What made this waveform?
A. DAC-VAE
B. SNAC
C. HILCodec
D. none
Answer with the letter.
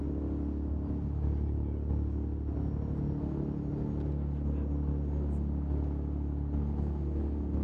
D